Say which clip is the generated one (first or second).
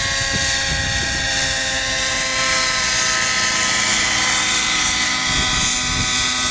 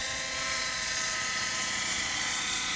second